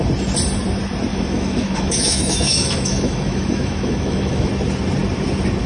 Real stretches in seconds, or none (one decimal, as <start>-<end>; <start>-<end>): 0.0-1.1; 4.5-5.7